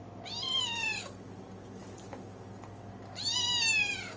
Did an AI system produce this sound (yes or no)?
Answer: no